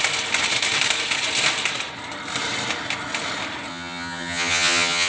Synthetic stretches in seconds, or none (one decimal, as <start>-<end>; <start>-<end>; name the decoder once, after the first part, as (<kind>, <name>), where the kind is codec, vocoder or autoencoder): 3.7-5.1 (vocoder, HiFi-GAN)